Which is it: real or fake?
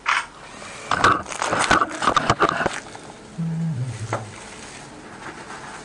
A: real